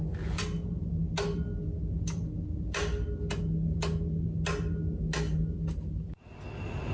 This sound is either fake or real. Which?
real